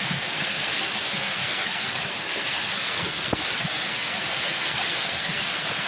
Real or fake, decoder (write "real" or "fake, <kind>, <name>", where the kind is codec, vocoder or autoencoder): fake, codec, SNAC